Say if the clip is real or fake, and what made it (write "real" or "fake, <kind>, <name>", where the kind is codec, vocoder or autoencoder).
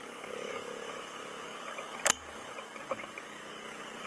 fake, codec, DAC